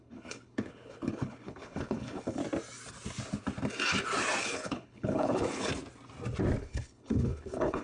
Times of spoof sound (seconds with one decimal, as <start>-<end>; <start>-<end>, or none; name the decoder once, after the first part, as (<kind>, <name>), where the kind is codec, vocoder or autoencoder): 0.0-2.4 (codec, HILCodec); 4.4-5.7; 6.6-7.8